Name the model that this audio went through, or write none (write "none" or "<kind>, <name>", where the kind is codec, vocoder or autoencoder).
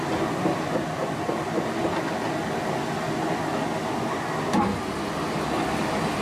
none